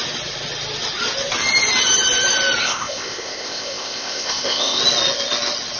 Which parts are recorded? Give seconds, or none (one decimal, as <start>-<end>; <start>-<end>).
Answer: 0.0-2.6; 4.8-5.8